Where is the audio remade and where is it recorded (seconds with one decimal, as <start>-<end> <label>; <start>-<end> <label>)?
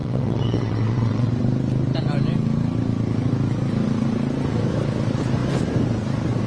0.0-1.3 remade; 1.3-6.5 recorded